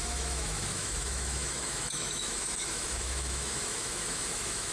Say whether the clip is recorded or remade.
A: remade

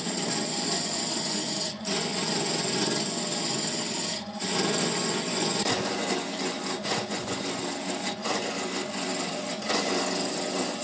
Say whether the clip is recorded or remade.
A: remade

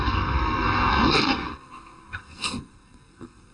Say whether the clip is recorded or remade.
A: remade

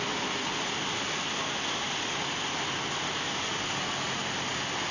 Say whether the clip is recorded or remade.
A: recorded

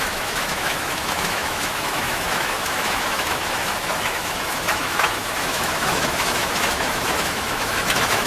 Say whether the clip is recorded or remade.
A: remade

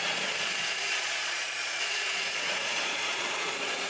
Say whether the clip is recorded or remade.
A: remade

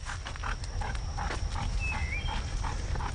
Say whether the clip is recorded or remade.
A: recorded